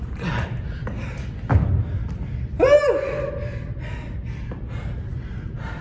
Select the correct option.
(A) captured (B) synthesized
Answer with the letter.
A